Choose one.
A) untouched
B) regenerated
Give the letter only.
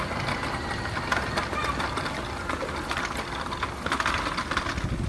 A